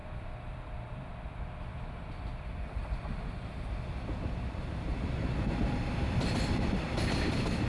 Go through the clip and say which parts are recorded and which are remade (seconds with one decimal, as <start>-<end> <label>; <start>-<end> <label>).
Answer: 0.0-7.7 remade